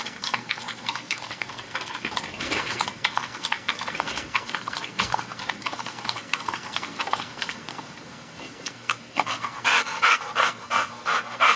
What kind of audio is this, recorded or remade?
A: remade